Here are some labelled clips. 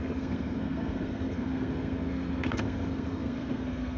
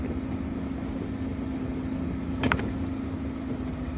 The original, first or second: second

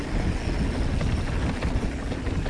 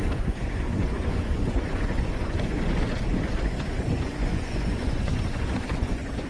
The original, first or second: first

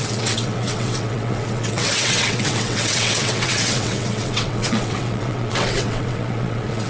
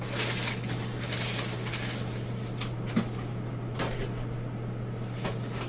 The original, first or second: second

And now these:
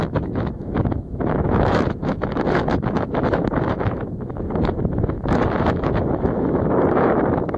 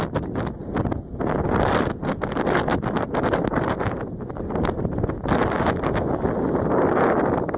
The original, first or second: second